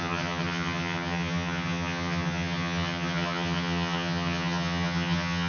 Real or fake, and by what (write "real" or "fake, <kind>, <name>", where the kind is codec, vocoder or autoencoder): fake, vocoder, HiFi-GAN